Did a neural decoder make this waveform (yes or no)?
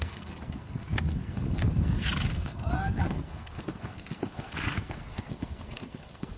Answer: yes